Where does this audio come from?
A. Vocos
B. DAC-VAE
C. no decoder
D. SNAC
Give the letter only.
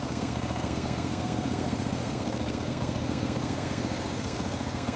D